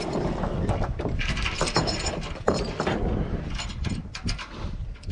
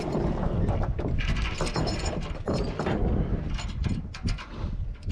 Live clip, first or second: second